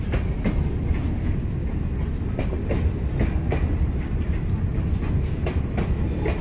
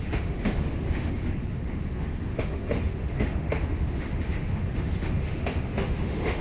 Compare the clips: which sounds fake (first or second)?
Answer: second